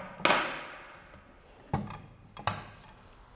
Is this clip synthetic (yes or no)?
no